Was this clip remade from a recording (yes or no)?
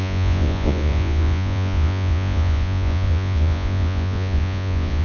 yes